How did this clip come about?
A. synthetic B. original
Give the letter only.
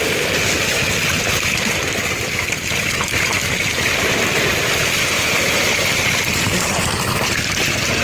B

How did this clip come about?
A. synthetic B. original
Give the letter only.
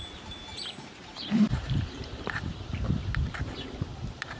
A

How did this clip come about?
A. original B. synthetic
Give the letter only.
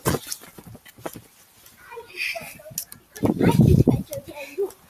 A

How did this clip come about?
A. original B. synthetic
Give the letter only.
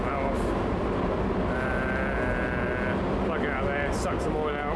A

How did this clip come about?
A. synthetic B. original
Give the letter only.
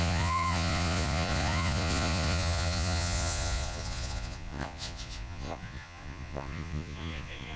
A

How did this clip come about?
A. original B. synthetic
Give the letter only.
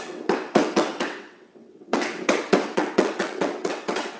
B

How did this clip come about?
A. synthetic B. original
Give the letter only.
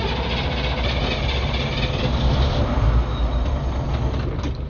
B